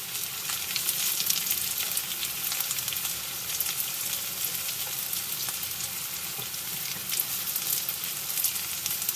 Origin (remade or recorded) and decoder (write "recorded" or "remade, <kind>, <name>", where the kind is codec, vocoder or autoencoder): recorded